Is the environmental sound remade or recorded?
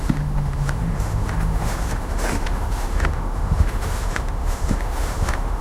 remade